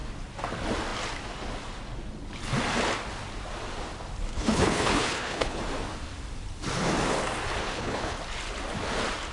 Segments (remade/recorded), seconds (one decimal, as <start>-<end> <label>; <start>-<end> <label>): 0.0-4.3 recorded; 4.3-5.6 remade; 5.6-7.6 recorded; 7.6-8.2 remade; 8.2-9.3 recorded